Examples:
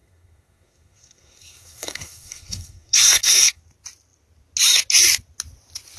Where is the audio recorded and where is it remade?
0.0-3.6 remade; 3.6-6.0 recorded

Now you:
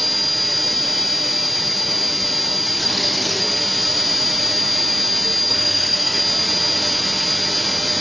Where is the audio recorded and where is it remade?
0.0-2.8 recorded; 2.8-3.4 remade; 3.4-5.5 recorded; 5.5-6.2 remade; 6.2-8.0 recorded

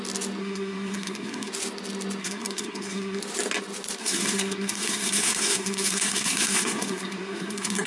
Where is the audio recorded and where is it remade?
0.0-0.4 recorded; 0.4-1.5 remade; 1.5-2.2 recorded; 2.2-3.2 remade; 3.2-4.0 recorded; 4.0-7.9 remade

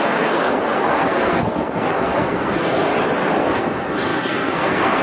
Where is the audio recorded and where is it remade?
0.0-2.9 remade; 2.9-3.4 recorded; 3.4-5.0 remade